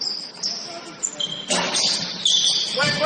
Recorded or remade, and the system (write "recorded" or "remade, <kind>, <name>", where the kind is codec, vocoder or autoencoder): recorded